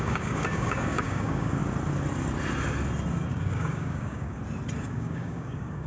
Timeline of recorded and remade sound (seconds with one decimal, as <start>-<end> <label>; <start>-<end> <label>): 0.0-1.6 remade; 1.6-3.3 recorded; 3.3-4.4 remade; 4.4-4.9 recorded; 4.9-5.9 remade